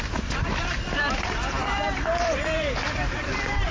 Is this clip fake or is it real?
fake